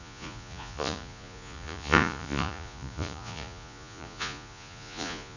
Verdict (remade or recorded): remade